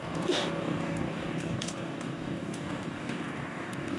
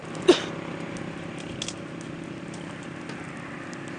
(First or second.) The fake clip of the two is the first